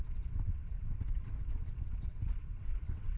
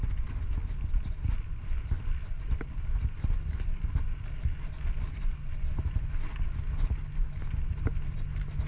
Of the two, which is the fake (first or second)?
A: first